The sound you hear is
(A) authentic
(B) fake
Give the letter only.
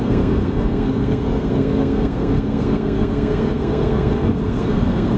B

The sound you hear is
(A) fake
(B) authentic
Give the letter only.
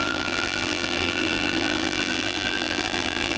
A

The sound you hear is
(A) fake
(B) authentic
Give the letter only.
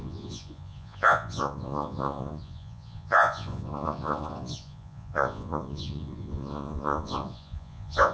A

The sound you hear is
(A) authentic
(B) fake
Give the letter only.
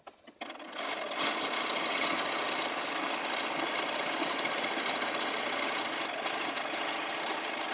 A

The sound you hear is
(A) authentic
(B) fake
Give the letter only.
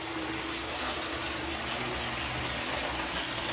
A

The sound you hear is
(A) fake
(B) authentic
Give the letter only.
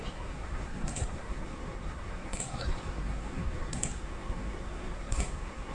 A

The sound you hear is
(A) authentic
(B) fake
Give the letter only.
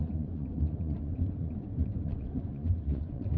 B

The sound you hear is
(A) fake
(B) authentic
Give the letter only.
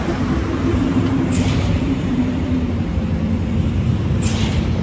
A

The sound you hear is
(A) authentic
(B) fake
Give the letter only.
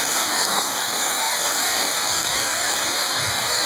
B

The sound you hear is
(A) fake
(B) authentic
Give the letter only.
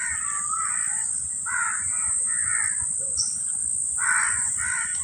B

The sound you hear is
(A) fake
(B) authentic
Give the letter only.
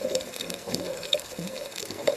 A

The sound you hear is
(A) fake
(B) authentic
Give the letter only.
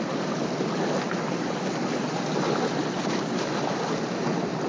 B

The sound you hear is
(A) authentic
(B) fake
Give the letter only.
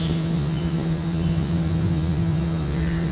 B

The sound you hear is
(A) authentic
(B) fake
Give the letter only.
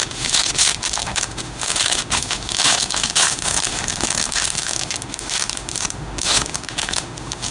B